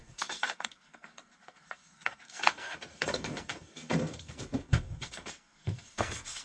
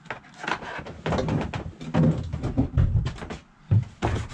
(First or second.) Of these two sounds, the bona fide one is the second